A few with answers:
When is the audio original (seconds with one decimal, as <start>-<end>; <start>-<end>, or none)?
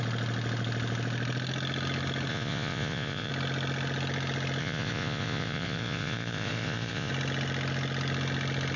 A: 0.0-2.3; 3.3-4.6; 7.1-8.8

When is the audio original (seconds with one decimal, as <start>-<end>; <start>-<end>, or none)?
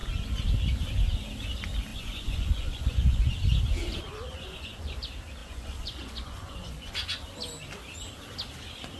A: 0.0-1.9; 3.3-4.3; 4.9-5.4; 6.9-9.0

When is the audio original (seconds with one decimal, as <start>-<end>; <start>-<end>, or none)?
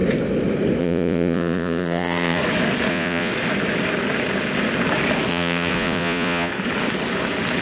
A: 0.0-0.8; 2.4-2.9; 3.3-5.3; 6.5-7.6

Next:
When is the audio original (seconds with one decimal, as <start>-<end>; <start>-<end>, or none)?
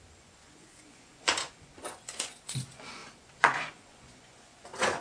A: none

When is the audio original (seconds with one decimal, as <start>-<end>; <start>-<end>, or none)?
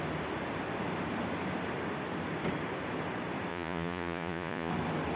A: 0.0-3.5; 4.7-5.2